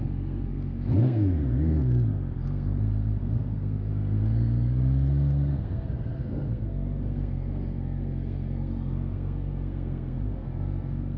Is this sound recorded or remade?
remade